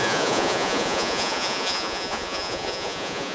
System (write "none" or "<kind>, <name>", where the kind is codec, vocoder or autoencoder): vocoder, Vocos